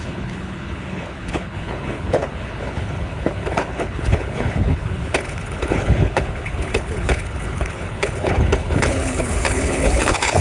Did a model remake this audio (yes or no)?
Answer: yes